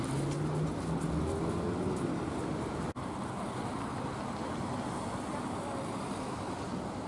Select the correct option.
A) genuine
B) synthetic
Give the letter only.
A